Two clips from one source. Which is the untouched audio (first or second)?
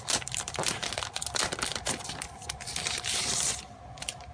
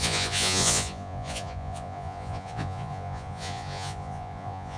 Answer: first